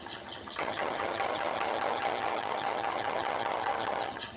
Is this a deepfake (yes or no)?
yes